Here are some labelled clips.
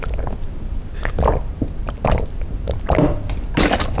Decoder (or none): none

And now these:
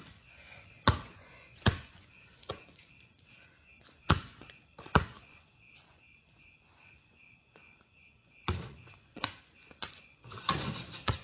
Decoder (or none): vocoder, Vocos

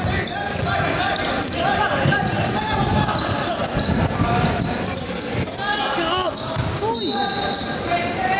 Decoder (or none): none